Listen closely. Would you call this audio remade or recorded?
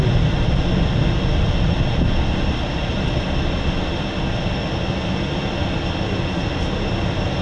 recorded